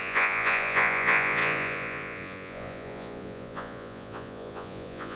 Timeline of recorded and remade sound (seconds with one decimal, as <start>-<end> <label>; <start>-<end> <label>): 0.0-5.2 remade

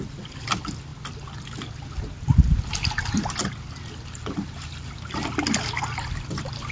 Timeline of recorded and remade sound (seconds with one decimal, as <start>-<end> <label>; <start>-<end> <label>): 0.0-6.7 recorded

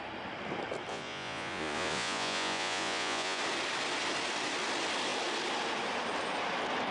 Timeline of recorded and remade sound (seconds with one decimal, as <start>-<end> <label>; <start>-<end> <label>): 0.0-0.9 recorded; 0.9-3.4 remade; 3.4-6.9 recorded

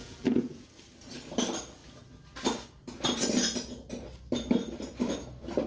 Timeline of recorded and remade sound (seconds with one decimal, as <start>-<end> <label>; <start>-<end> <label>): 0.0-0.7 remade; 0.7-5.7 recorded

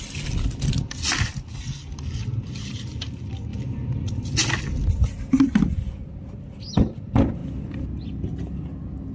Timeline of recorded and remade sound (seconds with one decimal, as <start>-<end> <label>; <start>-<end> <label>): 0.0-9.1 recorded

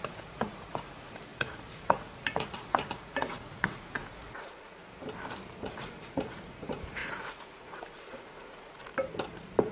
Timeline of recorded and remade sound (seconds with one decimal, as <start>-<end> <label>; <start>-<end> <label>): 0.0-4.8 remade; 4.8-5.6 recorded; 5.6-8.9 remade; 8.9-9.7 recorded